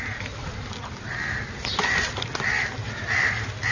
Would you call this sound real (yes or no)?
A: yes